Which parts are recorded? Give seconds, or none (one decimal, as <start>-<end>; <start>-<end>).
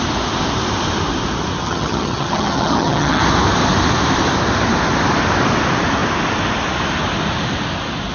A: 0.0-1.6; 3.2-8.1